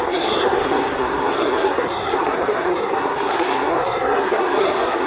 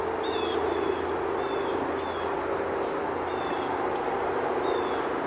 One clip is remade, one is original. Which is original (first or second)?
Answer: second